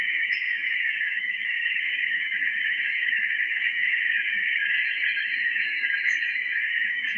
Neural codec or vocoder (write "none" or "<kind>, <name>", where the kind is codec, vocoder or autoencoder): autoencoder, DAC-VAE